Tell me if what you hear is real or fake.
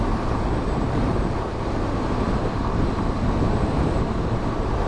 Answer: fake